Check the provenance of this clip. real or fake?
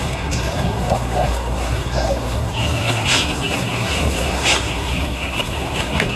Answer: fake